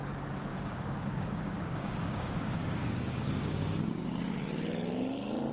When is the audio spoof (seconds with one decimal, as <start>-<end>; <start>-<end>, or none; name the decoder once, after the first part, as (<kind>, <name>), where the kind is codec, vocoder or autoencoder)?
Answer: 0.5-3.8 (codec, DAC)